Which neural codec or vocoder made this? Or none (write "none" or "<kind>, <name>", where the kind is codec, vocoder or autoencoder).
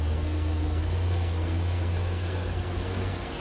codec, SNAC